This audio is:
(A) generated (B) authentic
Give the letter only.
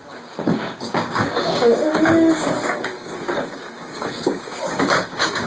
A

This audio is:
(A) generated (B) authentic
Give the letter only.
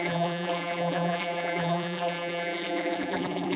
A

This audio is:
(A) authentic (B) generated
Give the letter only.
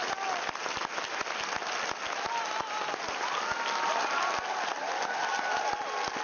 A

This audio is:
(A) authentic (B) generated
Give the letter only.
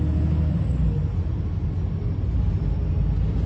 A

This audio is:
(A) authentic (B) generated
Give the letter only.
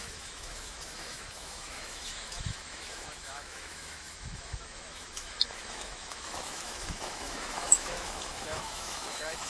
B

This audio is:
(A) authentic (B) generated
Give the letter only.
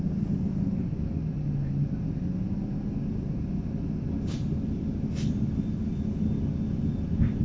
A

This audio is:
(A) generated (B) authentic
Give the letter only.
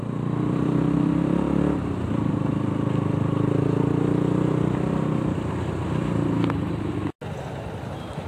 B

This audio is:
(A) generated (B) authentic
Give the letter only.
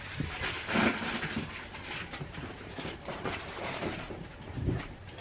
A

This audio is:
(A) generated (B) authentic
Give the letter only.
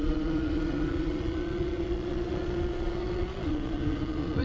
A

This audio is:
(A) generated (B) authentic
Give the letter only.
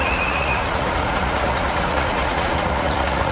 A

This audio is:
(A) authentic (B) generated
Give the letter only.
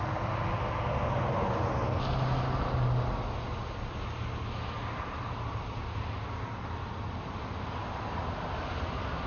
A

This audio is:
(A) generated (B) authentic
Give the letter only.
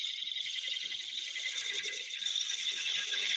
B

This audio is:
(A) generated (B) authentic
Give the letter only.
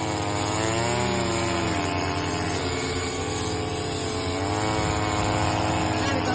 B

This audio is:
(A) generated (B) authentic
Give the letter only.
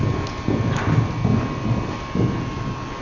B